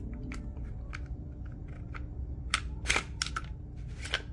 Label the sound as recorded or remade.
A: recorded